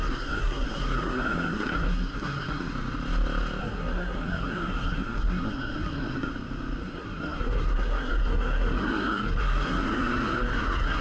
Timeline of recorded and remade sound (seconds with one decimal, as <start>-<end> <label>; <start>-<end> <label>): 0.0-2.7 remade; 2.7-3.6 recorded; 3.6-6.3 remade; 6.3-6.8 recorded; 6.8-11.0 remade